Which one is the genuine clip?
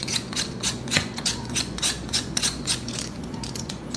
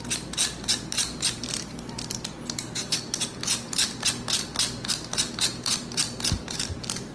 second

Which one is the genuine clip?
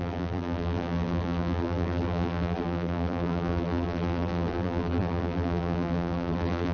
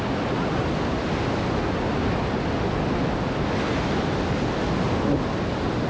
second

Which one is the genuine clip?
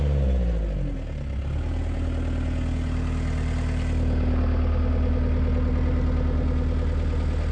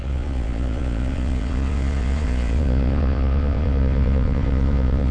first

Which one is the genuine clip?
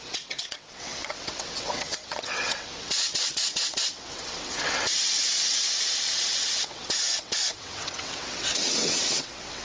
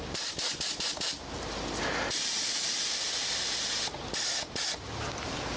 second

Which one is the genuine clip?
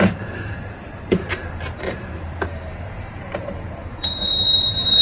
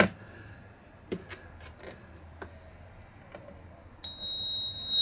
second